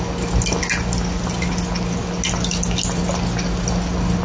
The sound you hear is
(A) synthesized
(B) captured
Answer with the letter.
B